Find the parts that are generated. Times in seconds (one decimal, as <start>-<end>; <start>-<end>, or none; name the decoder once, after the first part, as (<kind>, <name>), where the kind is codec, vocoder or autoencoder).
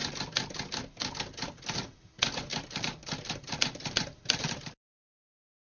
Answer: 2.5-4.5 (vocoder, BigVGAN v2)